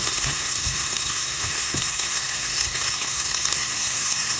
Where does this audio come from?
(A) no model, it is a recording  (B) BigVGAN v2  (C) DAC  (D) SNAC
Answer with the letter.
D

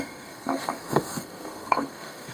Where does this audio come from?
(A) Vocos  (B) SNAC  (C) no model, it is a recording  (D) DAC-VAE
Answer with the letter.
B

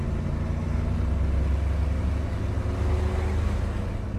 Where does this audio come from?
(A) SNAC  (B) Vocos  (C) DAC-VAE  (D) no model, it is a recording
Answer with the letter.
D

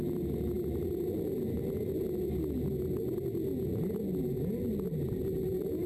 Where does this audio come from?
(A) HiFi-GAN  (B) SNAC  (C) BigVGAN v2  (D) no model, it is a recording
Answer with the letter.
D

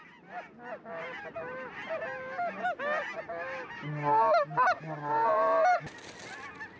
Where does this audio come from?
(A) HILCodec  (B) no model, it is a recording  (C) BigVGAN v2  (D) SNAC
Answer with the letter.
B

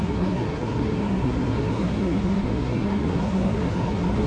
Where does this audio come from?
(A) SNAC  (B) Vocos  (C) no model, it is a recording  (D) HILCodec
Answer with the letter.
A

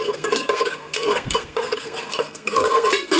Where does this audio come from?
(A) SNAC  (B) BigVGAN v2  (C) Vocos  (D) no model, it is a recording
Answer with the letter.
A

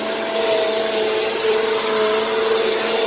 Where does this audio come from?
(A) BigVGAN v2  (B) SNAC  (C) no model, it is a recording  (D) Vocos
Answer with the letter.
C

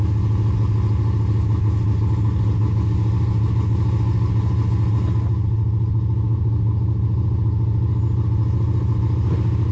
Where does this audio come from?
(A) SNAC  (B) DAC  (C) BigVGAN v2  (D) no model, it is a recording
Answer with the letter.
D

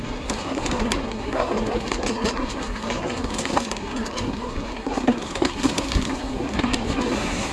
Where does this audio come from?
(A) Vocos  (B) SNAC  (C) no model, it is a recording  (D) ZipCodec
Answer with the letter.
B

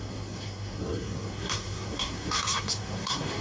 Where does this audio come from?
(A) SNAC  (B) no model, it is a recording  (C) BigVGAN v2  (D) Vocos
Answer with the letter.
A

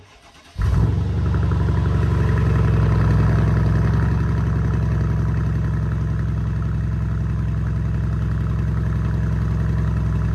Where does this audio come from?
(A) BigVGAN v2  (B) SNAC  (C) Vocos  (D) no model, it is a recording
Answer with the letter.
D